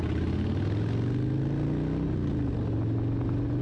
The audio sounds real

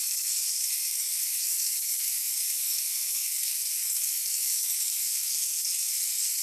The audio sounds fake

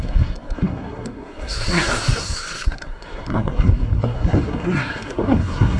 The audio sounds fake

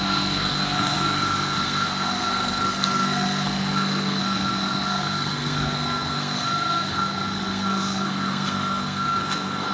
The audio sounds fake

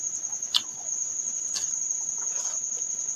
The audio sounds real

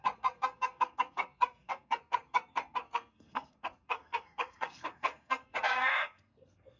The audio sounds fake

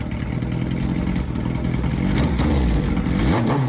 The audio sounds real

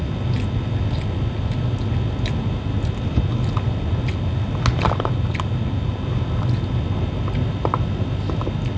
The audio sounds real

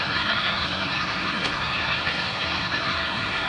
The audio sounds fake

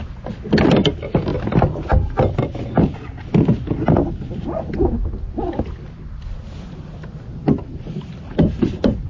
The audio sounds real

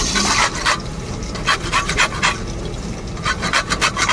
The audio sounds real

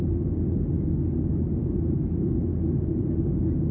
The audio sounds real